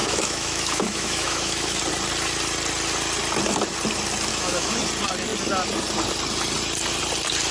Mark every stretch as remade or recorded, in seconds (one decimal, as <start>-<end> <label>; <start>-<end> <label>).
0.0-1.8 remade; 1.8-4.3 recorded; 4.3-4.8 remade; 4.8-7.5 recorded